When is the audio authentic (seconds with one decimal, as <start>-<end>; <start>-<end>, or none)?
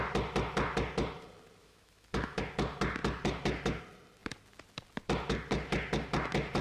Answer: 0.0-1.6; 2.4-6.6